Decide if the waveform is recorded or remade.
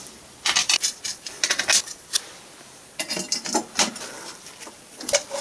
recorded